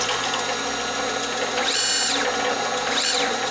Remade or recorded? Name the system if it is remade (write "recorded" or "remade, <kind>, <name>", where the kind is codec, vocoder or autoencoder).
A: recorded